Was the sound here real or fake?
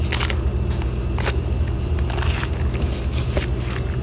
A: real